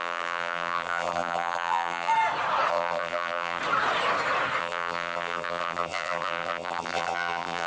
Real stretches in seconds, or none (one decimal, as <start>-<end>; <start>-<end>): 2.1-2.7; 3.6-4.6